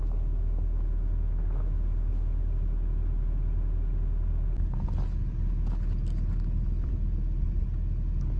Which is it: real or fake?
real